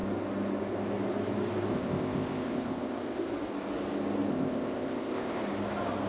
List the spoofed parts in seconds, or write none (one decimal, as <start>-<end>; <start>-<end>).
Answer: 1.7-3.3; 4.3-5.4